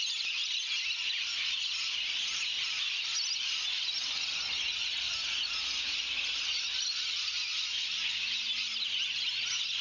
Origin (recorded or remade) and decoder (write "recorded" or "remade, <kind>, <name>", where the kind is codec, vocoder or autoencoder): recorded